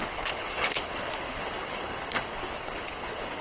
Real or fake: fake